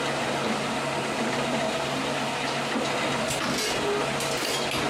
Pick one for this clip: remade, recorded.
recorded